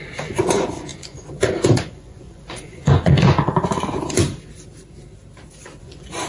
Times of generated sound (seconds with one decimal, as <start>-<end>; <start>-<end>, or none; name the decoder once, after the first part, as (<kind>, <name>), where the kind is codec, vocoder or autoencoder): 0.0-4.2 (vocoder, Vocos); 5.8-6.3